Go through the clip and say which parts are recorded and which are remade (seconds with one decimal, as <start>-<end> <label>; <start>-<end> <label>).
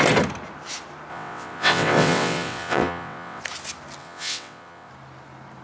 0.0-1.1 recorded; 1.1-3.4 remade; 3.4-4.0 recorded; 4.0-4.9 remade; 4.9-5.6 recorded